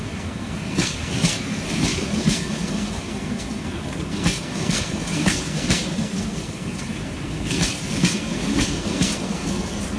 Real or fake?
fake